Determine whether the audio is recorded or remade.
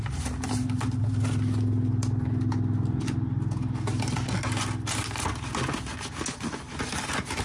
recorded